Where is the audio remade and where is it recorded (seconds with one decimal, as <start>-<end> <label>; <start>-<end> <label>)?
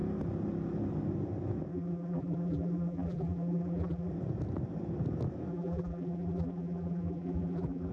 0.0-1.7 recorded; 1.7-4.1 remade; 4.1-5.5 recorded; 5.5-7.9 remade